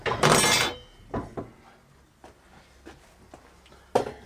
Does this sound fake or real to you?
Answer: real